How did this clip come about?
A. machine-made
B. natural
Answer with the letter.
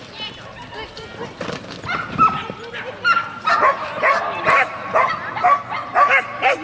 B